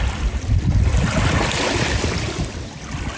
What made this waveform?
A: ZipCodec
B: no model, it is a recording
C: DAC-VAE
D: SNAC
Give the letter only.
B